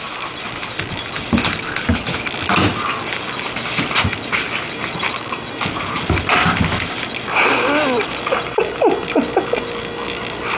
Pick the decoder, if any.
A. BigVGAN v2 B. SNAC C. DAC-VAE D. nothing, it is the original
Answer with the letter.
D